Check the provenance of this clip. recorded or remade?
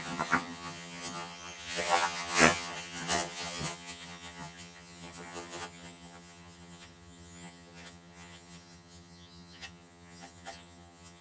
remade